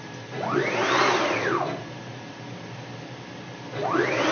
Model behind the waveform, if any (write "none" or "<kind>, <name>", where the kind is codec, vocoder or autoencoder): none